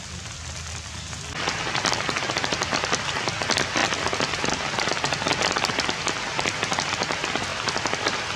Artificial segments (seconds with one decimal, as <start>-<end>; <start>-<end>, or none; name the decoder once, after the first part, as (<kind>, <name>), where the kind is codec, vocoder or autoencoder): none